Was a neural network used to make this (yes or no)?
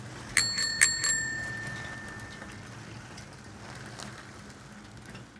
no